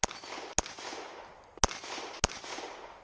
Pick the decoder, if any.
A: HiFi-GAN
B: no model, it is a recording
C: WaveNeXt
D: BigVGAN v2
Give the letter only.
B